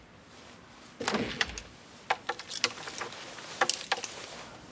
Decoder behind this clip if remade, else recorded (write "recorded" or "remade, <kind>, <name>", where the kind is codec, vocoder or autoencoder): recorded